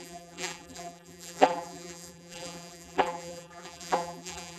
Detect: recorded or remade remade